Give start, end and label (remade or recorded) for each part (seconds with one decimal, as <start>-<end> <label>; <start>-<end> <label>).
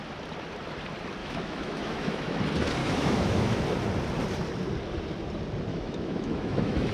0.0-1.2 recorded; 1.2-2.4 remade; 2.4-2.8 recorded; 2.8-3.6 remade; 3.6-5.7 recorded; 5.7-6.9 remade